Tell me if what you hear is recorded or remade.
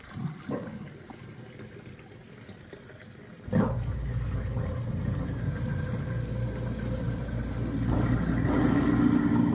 recorded